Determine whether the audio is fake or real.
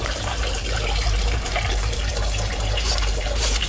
fake